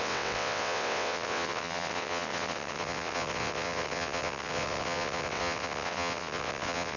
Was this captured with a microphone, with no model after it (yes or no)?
no